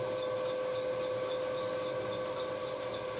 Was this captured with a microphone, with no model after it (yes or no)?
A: yes